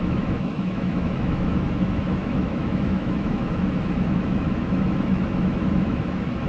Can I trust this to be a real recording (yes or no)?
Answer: no